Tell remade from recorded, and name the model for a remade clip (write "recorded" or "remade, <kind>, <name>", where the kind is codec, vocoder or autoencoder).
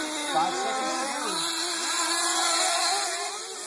recorded